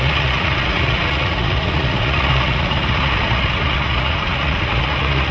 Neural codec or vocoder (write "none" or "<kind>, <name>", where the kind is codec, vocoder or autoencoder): vocoder, Vocos